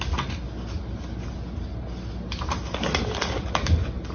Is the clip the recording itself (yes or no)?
yes